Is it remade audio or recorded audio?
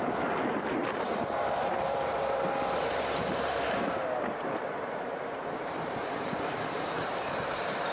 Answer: remade